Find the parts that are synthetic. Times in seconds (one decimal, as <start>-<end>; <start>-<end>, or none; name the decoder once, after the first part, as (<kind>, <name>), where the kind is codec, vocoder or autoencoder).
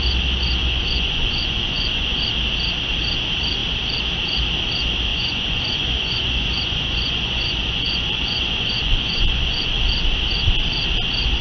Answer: 0.6-2.2 (vocoder, Vocos); 5.1-9.8